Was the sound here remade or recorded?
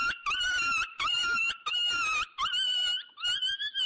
remade